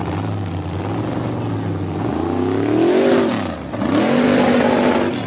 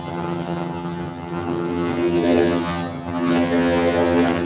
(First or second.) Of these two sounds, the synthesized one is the second